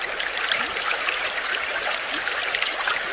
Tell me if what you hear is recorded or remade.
remade